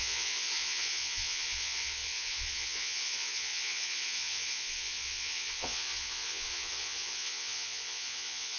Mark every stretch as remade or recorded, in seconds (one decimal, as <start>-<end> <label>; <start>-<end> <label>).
0.0-8.6 remade